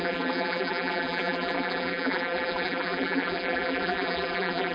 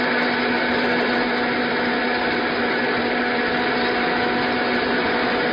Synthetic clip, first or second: first